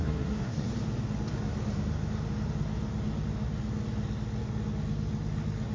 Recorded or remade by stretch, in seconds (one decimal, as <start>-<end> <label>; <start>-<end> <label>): 0.0-0.7 remade; 0.7-5.7 recorded

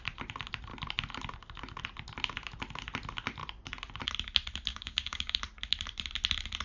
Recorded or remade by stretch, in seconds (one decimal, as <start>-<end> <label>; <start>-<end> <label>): 0.0-4.7 recorded; 4.7-5.4 remade; 5.4-6.6 recorded

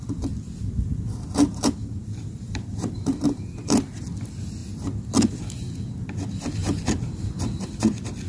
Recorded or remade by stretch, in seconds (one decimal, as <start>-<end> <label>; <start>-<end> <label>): 0.0-1.5 recorded; 1.5-3.8 remade; 3.8-6.6 recorded; 6.6-7.4 remade; 7.4-8.3 recorded

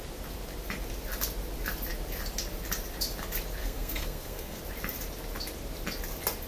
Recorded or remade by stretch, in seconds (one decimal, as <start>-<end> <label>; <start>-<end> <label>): 0.0-3.6 recorded; 3.6-4.6 remade; 4.6-6.5 recorded

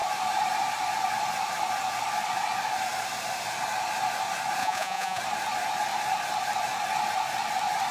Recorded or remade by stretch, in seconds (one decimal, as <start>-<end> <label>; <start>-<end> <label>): 0.0-4.6 recorded; 4.6-5.2 remade; 5.2-7.9 recorded